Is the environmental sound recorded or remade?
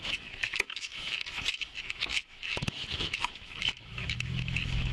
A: remade